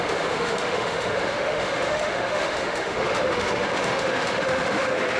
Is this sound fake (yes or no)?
yes